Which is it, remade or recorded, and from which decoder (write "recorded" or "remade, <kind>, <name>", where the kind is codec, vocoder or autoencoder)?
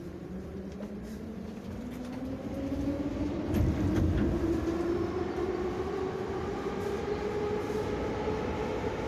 recorded